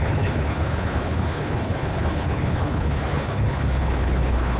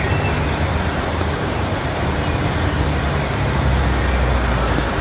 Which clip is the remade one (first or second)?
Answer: first